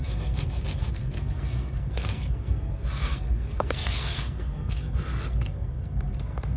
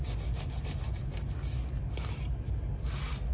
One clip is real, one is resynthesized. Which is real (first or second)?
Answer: second